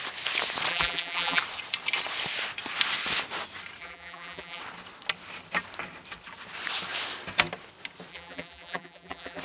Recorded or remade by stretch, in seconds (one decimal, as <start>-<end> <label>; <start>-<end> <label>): 0.0-0.7 recorded; 0.7-1.4 remade; 1.4-3.8 recorded; 3.8-4.6 remade; 4.6-8.1 recorded; 8.1-9.4 remade